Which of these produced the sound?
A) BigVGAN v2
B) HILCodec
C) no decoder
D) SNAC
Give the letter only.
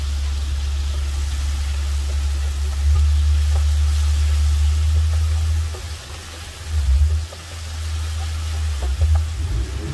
C